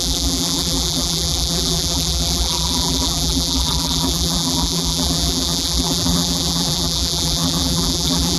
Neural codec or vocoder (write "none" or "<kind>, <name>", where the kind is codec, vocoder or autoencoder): vocoder, BigVGAN v2